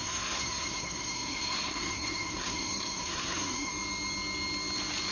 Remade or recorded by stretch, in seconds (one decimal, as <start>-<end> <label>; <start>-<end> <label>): 0.0-3.7 remade; 3.7-5.1 recorded